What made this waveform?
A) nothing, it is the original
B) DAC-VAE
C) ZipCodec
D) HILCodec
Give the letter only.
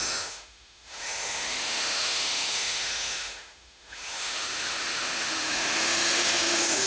B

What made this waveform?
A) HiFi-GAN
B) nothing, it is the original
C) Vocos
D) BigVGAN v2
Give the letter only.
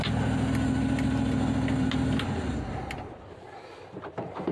B